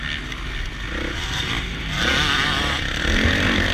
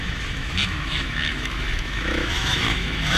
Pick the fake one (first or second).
second